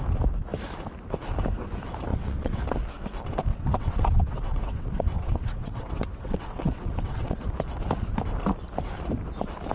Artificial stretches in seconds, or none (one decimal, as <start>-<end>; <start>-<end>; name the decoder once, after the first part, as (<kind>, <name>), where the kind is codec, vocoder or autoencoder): 2.1-2.6 (vocoder, WaveNeXt); 3.5-7.4